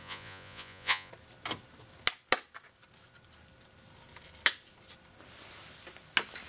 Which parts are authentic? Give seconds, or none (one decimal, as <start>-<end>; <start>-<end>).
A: 1.1-6.5